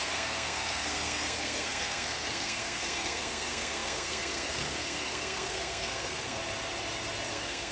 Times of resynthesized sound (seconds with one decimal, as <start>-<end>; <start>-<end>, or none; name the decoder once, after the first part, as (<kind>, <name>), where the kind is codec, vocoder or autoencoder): 0.0-6.4 (codec, SNAC); 7.3-7.7